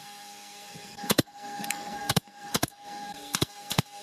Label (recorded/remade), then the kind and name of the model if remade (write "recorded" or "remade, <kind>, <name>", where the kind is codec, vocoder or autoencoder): remade, codec, SNAC